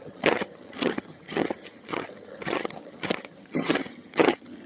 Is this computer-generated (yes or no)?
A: yes